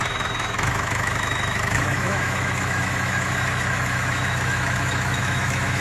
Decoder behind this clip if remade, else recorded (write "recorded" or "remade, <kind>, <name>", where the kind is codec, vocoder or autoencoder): remade, autoencoder, DAC-VAE